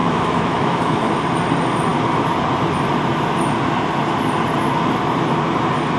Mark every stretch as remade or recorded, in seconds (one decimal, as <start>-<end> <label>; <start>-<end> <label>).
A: 0.0-1.1 remade; 1.1-6.0 recorded